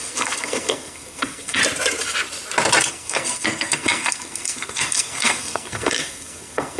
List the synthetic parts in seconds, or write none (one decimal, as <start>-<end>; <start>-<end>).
0.0-1.6; 2.9-6.8